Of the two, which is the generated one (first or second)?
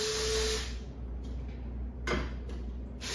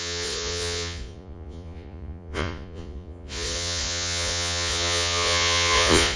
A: second